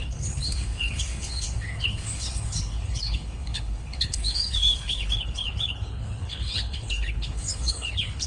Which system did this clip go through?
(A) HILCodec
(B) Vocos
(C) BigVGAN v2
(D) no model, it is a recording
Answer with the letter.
A